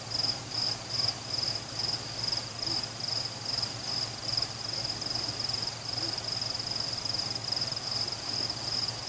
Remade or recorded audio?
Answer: recorded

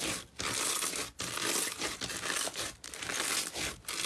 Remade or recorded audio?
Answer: recorded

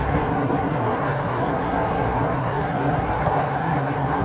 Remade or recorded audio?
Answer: remade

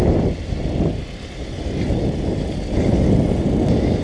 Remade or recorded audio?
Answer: recorded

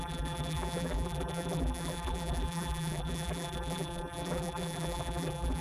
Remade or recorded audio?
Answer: remade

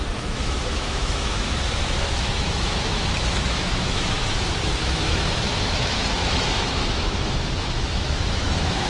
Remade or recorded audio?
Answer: remade